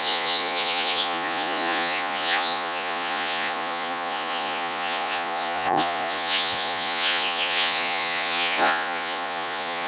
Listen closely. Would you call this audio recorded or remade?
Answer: remade